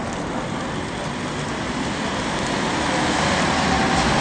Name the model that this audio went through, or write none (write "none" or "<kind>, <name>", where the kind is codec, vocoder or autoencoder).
none